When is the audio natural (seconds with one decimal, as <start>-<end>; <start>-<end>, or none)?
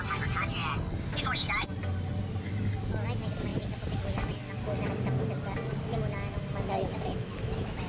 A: 0.0-6.9